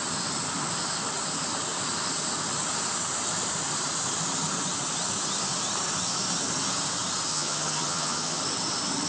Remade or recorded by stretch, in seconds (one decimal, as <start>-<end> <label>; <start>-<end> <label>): 0.0-7.3 recorded; 7.3-8.4 remade; 8.4-9.1 recorded